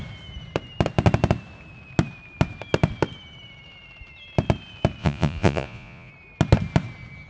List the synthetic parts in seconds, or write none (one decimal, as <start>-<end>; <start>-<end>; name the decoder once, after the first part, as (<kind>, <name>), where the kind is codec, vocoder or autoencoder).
5.0-6.1 (vocoder, Vocos)